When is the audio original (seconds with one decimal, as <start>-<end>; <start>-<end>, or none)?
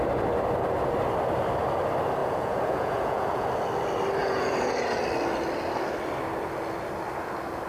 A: 0.0-2.2; 3.5-4.2; 5.0-7.7